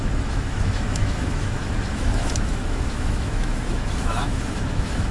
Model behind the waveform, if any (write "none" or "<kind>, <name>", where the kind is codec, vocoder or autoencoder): autoencoder, DAC-VAE